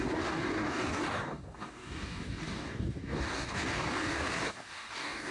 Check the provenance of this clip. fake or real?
fake